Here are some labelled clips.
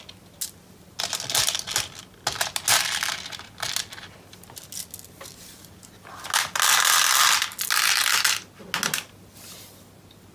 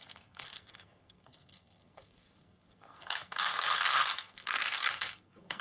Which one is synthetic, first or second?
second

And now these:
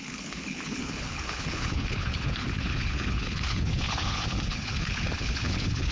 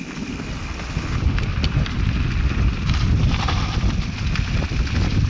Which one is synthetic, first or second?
first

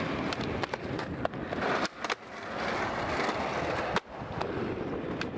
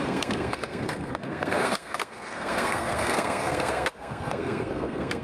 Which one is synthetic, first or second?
second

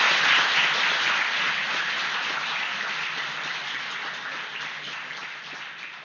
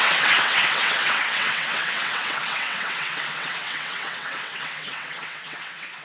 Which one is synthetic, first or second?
second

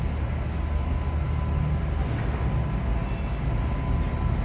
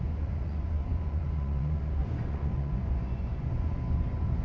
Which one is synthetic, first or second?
second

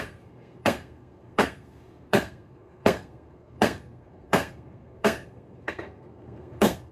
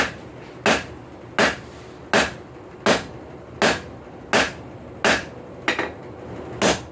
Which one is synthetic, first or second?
first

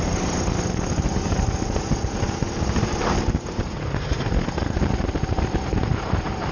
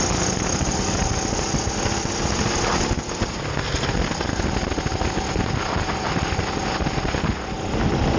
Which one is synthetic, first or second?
first